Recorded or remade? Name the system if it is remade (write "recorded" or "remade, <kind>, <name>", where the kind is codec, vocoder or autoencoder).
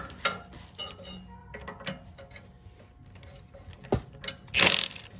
recorded